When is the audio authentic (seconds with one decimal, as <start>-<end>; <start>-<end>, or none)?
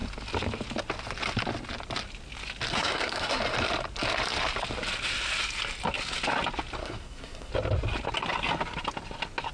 0.0-2.7; 3.4-6.8; 7.5-9.5